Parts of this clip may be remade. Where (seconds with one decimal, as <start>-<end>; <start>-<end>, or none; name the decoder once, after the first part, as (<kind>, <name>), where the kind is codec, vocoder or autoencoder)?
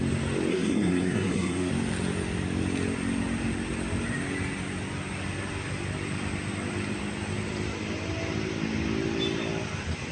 0.5-1.7 (codec, SNAC)